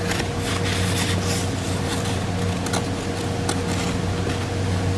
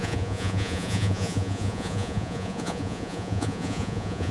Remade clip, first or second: second